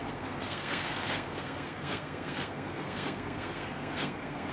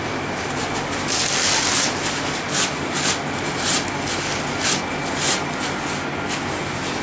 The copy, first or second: first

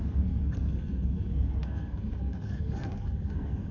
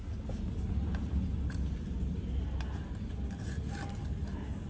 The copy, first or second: first